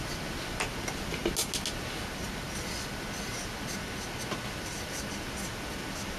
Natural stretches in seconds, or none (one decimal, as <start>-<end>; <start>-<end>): 0.0-6.2